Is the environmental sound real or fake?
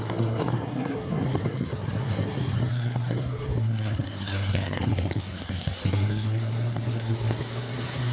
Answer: fake